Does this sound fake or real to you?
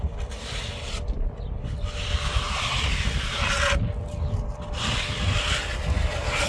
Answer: real